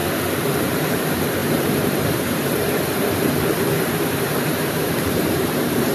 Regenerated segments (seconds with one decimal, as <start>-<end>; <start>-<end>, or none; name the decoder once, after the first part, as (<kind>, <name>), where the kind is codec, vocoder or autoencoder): 0.6-5.9 (vocoder, BigVGAN v2)